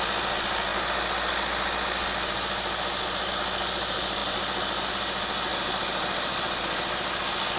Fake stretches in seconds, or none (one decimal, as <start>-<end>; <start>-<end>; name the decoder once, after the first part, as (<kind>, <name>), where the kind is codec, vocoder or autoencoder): none